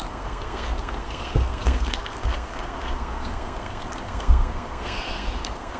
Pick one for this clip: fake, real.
fake